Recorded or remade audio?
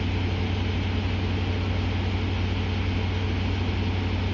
recorded